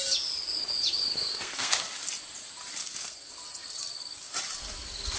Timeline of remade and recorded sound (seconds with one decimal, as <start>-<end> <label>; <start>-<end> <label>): 0.0-1.3 recorded; 1.3-1.9 remade; 1.9-2.8 recorded; 2.8-3.3 remade; 3.3-5.2 recorded